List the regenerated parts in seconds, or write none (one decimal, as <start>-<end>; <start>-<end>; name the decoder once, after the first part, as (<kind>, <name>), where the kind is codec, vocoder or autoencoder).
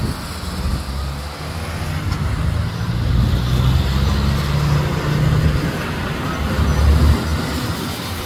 none